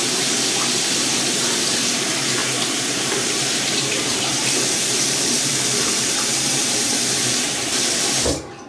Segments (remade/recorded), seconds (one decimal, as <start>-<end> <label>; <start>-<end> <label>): 0.0-2.4 recorded; 2.4-7.5 remade; 7.5-8.7 recorded